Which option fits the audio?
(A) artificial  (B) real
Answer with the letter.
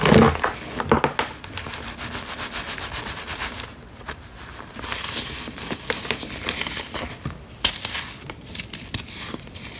B